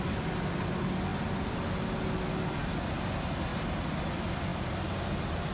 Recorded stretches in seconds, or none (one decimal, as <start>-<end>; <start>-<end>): 0.0-3.5; 4.1-4.5